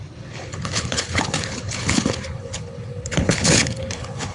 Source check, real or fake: fake